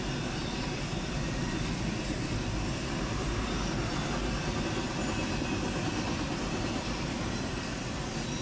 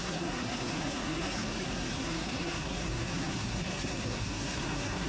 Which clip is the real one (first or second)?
first